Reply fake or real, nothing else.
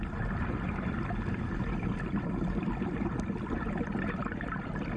real